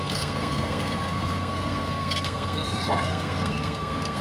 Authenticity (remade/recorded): remade